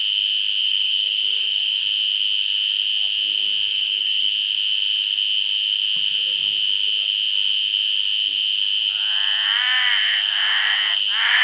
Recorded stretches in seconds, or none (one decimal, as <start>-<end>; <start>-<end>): 0.0-0.6; 1.8-3.7; 4.3-11.4